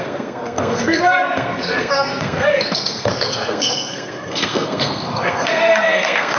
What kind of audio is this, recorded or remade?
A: remade